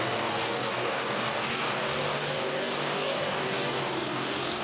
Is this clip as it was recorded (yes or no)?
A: no